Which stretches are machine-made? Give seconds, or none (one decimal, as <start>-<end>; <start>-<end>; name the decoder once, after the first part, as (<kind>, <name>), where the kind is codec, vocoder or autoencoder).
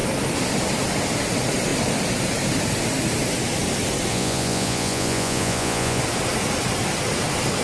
4.1-6.0 (vocoder, Vocos)